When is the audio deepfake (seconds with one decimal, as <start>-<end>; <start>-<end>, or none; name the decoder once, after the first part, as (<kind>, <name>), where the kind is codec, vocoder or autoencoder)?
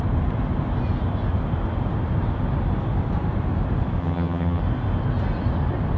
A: 4.0-4.6 (vocoder, HiFi-GAN)